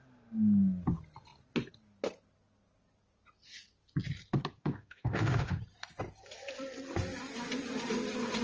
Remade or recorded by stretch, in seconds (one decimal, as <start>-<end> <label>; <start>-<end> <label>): 0.0-4.6 recorded; 4.6-5.6 remade; 5.6-8.4 recorded